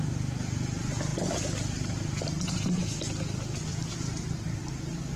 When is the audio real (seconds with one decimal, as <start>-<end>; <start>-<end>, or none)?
0.0-3.7